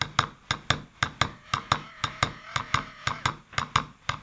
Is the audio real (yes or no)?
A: yes